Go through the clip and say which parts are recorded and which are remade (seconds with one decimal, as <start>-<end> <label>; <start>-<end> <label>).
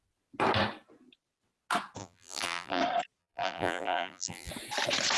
0.0-2.0 recorded; 2.0-2.8 remade; 2.8-3.2 recorded; 3.2-4.5 remade; 4.5-5.2 recorded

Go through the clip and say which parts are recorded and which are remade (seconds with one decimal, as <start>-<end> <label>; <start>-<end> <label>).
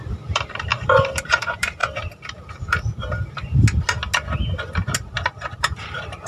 0.0-1.8 remade; 1.8-5.6 recorded; 5.6-6.3 remade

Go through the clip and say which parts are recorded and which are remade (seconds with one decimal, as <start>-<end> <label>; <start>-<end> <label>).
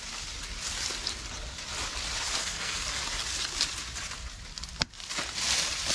0.0-2.4 recorded; 2.4-3.0 remade; 3.0-5.9 recorded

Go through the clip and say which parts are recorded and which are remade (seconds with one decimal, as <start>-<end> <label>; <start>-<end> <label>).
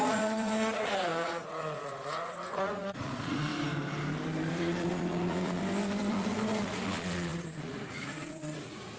0.0-3.5 remade; 3.5-4.5 recorded; 4.5-5.6 remade; 5.6-6.1 recorded; 6.1-9.0 remade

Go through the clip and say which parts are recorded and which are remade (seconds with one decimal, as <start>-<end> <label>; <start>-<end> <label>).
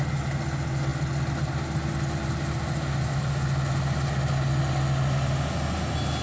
0.0-6.2 recorded